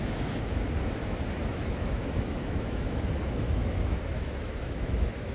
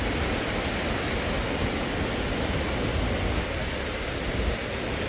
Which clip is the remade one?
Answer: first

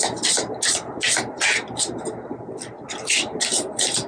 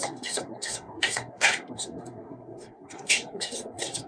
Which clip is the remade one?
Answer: second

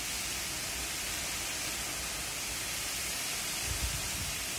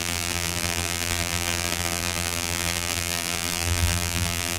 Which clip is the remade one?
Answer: second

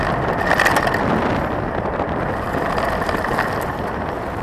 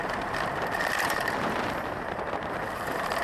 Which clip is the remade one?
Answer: second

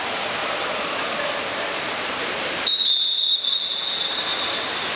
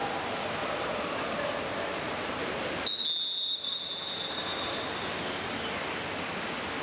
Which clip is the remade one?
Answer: first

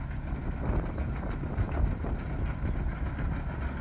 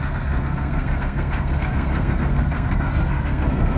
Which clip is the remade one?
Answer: second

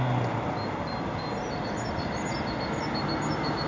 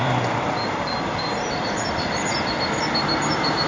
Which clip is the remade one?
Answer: second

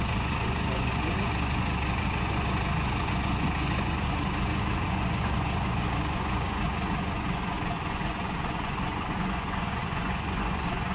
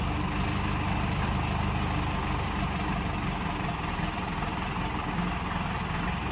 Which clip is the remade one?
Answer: first